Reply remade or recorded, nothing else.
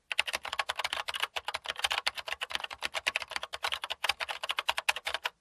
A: recorded